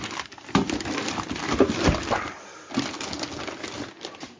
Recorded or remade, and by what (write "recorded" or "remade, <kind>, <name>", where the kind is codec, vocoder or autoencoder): recorded